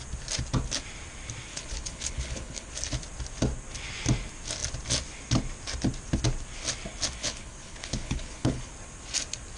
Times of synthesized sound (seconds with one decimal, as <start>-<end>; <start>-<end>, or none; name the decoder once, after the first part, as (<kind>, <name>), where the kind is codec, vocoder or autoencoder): 1.5-2.7 (codec, HILCodec); 7.2-8.7